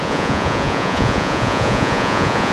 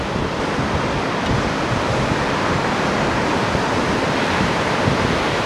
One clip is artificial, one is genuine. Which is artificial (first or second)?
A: first